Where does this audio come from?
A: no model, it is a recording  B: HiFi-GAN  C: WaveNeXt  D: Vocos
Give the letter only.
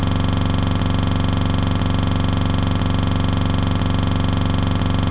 A